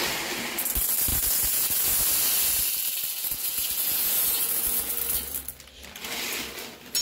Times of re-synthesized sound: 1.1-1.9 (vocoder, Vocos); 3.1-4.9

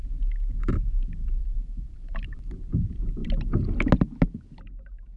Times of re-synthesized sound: 1.4-2.7 (vocoder, BigVGAN v2)